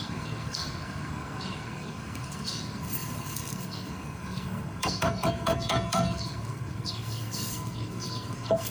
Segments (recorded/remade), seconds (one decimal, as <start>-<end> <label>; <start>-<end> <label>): 0.0-8.7 remade